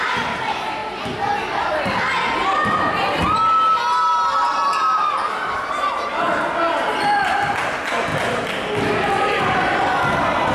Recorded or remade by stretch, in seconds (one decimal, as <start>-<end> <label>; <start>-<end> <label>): 0.0-10.5 recorded